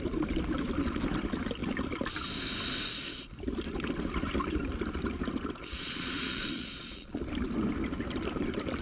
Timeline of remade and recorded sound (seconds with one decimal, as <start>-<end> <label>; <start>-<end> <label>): 0.0-5.6 recorded; 5.6-7.2 remade; 7.2-8.8 recorded